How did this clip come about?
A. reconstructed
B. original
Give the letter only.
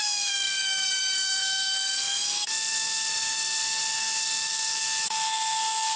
A